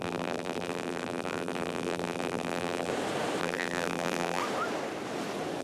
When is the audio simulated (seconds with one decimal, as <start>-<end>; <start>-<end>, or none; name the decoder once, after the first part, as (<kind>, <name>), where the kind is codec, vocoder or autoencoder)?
0.0-2.9 (vocoder, BigVGAN v2); 3.4-4.4